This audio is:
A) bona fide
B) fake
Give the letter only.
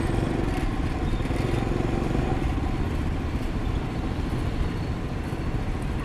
A